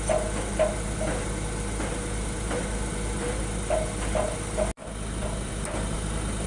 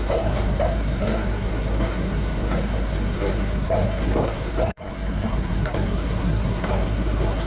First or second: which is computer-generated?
second